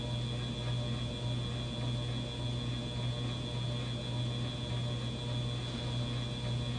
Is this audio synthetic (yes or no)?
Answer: no